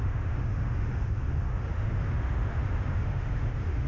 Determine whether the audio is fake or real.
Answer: fake